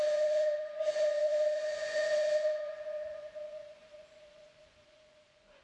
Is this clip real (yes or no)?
no